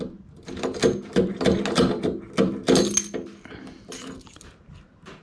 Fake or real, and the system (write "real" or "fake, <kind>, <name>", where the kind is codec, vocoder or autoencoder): real